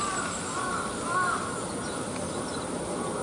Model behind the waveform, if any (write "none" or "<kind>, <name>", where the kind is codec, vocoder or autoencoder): none